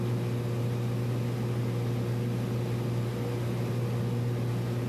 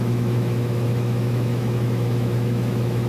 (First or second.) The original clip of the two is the first